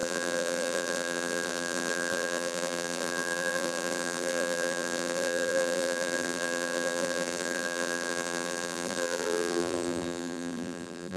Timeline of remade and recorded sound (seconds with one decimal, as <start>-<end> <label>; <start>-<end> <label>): 0.0-11.2 remade